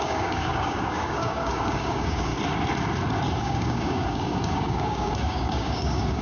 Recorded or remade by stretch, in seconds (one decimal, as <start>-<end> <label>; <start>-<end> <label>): 0.0-2.3 remade; 2.3-3.4 recorded; 3.4-6.2 remade